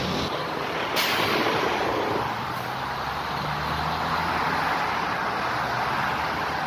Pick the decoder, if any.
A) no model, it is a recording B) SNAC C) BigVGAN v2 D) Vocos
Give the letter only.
A